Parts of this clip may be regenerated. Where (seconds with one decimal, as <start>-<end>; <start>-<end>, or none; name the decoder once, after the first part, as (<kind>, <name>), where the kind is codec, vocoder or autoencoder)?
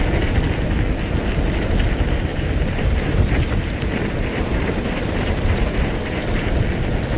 2.3-6.6 (vocoder, BigVGAN v2)